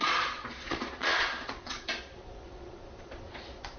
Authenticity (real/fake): fake